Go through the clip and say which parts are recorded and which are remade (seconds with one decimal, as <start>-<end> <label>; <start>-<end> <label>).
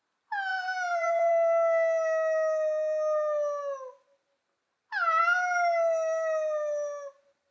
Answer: 0.0-0.5 recorded; 0.5-1.3 remade; 1.3-7.5 recorded